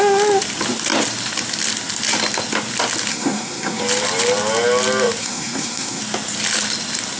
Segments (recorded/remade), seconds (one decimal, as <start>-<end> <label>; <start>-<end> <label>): 0.0-3.1 recorded; 3.1-3.8 remade; 3.8-5.2 recorded; 5.2-6.0 remade; 6.0-7.2 recorded